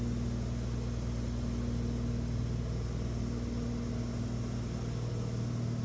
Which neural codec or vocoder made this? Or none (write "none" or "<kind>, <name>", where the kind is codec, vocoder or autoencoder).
none